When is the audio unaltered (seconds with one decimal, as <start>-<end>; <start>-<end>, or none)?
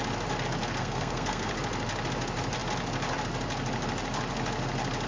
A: 0.0-0.8; 1.5-5.1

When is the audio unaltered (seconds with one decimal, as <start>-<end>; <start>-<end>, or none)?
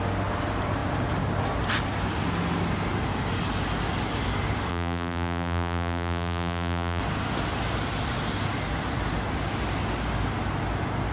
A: 0.0-4.7; 7.0-11.1